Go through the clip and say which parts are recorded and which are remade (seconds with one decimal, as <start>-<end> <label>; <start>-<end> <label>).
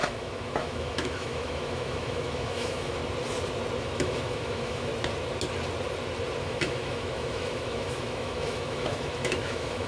0.0-3.0 remade; 3.0-3.8 recorded; 3.8-4.9 remade; 4.9-6.4 recorded; 6.4-9.9 remade